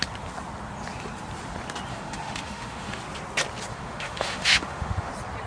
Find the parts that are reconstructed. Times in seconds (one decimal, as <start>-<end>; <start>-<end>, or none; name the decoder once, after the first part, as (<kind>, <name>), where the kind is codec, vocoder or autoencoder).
1.9-3.0 (autoencoder, DAC-VAE); 3.7-5.1